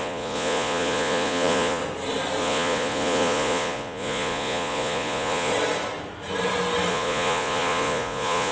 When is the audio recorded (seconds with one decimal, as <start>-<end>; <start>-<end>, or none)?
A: 1.8-2.4; 5.5-6.9